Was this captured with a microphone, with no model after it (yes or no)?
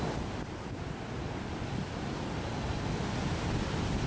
yes